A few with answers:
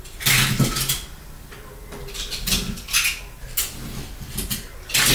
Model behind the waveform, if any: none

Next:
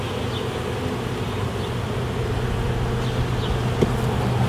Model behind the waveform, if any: none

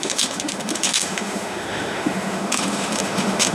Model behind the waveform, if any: autoencoder, DAC-VAE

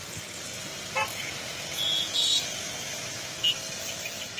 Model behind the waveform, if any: none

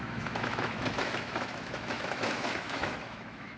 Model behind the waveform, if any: autoencoder, DAC-VAE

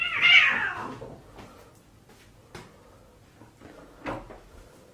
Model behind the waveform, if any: none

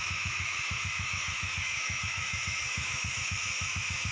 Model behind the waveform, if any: autoencoder, DAC-VAE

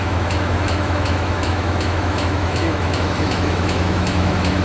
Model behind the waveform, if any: autoencoder, DAC-VAE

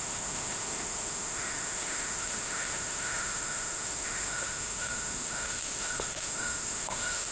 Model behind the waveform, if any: autoencoder, DAC-VAE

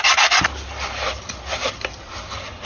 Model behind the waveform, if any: none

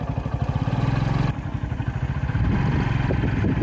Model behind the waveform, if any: none